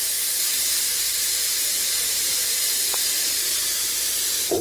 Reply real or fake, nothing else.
fake